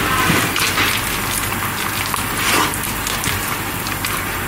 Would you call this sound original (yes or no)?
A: yes